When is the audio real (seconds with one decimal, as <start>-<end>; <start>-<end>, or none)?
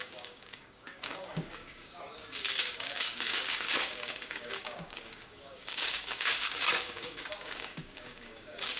none